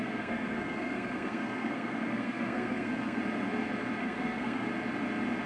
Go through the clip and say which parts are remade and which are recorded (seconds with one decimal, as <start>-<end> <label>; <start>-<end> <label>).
0.0-3.2 remade; 3.2-4.0 recorded; 4.0-4.7 remade; 4.7-5.5 recorded